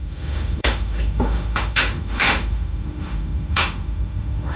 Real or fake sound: fake